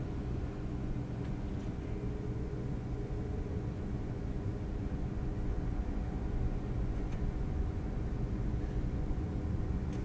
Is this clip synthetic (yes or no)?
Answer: yes